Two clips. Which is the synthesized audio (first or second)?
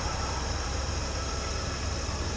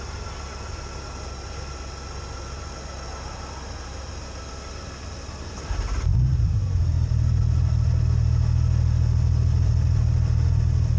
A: first